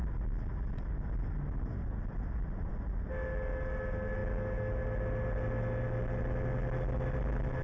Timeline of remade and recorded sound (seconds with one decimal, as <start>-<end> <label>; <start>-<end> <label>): 0.0-7.6 recorded